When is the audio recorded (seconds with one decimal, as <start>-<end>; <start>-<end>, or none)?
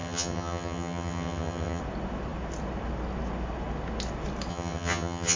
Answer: 1.8-4.5